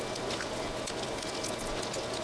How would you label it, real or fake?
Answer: real